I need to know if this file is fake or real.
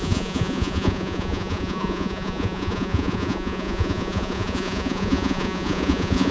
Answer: fake